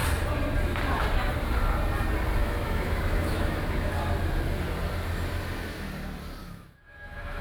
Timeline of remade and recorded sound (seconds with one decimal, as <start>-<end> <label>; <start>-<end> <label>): 0.0-2.4 recorded; 2.4-3.9 remade; 3.9-6.4 recorded; 6.4-7.4 remade